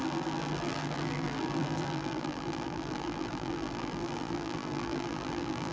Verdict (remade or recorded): remade